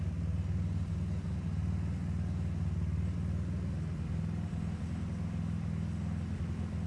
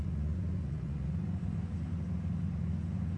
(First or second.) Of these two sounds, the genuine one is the first